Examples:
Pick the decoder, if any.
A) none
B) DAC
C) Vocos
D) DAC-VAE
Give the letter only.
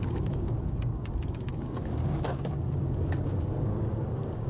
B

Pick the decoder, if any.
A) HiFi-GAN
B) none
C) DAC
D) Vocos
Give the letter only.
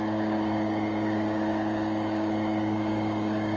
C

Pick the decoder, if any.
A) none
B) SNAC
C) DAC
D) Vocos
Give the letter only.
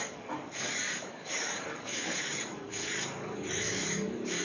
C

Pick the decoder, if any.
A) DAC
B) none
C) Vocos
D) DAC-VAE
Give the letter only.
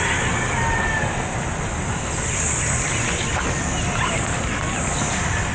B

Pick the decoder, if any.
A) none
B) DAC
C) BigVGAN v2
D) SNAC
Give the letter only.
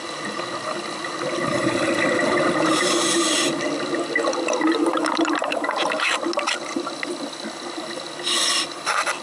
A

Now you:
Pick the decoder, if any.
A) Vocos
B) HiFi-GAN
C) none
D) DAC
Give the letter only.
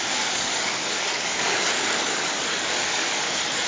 D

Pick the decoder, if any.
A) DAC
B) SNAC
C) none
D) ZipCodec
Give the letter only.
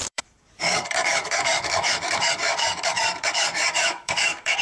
A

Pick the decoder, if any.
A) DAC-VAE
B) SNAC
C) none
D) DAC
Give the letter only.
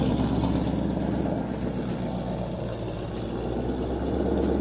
C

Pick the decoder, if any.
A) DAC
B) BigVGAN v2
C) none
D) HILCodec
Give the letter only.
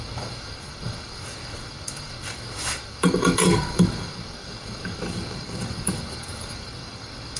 A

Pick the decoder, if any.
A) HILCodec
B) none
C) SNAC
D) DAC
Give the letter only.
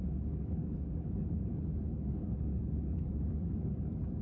D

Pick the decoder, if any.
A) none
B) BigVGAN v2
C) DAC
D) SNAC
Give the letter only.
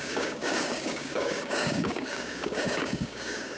C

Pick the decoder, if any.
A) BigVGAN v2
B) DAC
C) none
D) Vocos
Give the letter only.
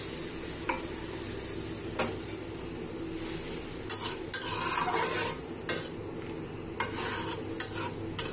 C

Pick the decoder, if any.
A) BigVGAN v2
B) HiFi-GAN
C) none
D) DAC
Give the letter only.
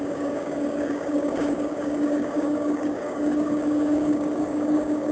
D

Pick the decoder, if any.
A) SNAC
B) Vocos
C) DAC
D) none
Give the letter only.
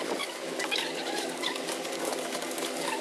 C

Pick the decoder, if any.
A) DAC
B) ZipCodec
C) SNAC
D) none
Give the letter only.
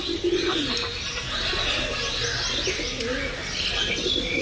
D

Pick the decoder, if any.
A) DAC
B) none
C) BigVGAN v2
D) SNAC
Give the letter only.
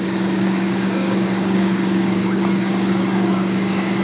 A